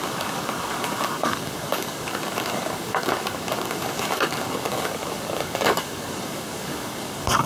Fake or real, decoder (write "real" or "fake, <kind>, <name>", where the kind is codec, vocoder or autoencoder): fake, codec, DAC